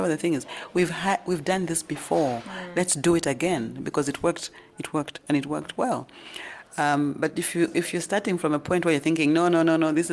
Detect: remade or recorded recorded